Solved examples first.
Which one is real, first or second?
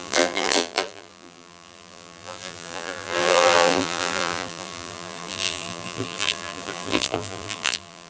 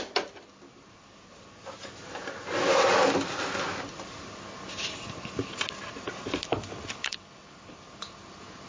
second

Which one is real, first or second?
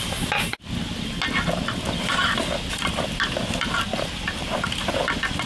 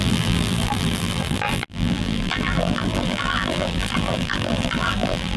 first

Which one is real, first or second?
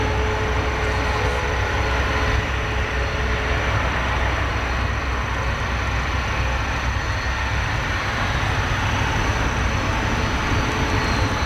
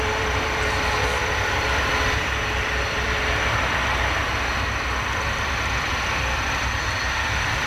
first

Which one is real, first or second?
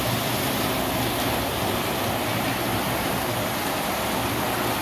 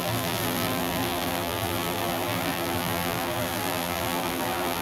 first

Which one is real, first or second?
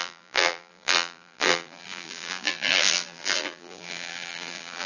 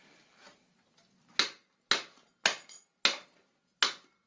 second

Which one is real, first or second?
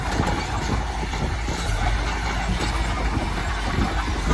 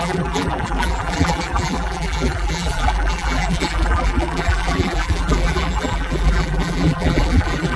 first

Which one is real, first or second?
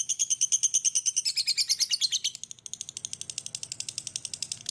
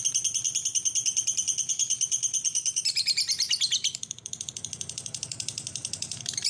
first